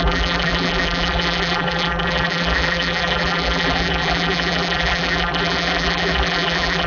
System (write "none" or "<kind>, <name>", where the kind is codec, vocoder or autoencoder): vocoder, BigVGAN v2